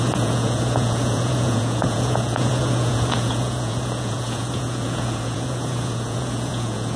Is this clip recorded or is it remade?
remade